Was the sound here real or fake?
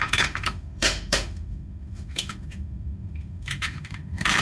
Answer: fake